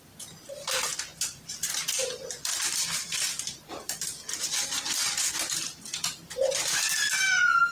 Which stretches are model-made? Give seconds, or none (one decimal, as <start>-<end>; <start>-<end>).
none